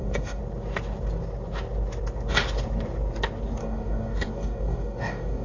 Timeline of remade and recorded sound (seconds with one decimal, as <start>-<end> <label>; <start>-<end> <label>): 0.0-0.4 remade; 0.4-3.6 recorded; 3.6-5.4 remade